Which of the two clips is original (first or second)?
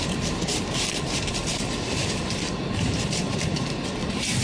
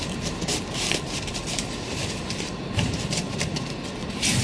second